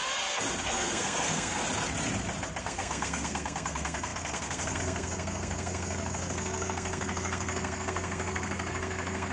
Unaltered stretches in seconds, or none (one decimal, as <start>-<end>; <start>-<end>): 0.0-0.6; 1.6-2.6